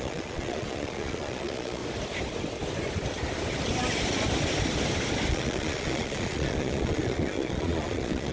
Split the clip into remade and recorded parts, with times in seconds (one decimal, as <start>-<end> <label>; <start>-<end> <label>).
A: 0.0-1.8 remade; 1.8-5.3 recorded; 5.3-8.3 remade